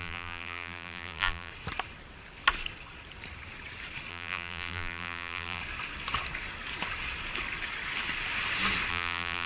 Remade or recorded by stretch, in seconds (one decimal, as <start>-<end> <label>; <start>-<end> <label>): 0.0-1.5 remade; 1.5-4.1 recorded; 4.1-5.6 remade; 5.6-8.9 recorded; 8.9-9.5 remade